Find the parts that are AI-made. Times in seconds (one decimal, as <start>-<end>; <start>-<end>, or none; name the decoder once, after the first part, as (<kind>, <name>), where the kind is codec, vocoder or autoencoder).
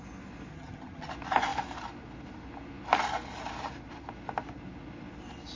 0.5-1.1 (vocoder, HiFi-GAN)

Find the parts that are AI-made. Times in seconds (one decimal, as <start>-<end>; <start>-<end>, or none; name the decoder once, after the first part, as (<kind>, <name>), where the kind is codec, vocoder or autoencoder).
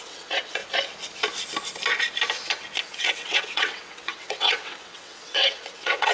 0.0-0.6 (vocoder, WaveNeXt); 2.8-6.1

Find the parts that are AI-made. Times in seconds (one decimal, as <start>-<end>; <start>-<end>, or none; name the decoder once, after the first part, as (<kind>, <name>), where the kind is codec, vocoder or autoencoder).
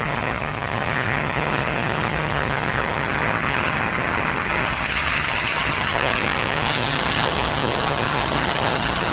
0.0-9.1 (vocoder, HiFi-GAN)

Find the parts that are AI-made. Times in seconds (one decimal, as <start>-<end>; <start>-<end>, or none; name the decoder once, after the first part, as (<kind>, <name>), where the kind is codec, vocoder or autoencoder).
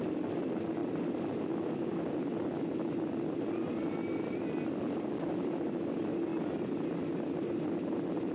0.8-1.3 (vocoder, BigVGAN v2)